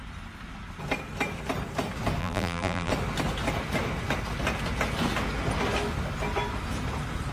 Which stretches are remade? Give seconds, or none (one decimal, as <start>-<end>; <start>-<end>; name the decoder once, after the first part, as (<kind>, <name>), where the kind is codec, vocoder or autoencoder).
2.2-2.9 (vocoder, BigVGAN v2)